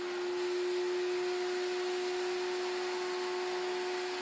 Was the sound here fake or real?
real